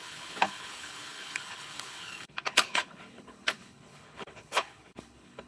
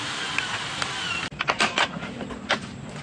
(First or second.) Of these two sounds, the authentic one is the second